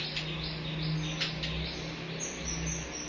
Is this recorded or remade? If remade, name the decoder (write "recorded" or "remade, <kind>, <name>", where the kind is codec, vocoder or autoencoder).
recorded